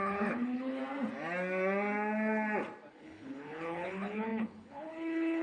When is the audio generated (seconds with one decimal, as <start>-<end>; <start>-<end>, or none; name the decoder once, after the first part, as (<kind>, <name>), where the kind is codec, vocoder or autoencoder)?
0.0-0.8 (codec, HILCodec); 2.9-5.4